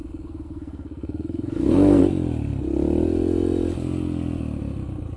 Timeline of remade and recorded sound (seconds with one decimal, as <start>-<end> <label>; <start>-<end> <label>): 0.0-2.0 remade; 2.0-5.2 recorded